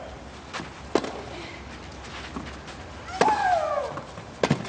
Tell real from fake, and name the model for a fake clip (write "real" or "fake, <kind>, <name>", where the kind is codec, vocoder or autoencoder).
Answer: real